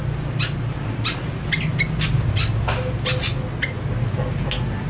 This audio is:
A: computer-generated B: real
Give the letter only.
B